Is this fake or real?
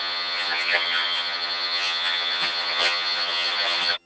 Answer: fake